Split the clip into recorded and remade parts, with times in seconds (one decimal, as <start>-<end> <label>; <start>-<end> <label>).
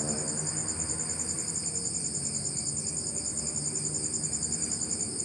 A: 0.0-5.2 recorded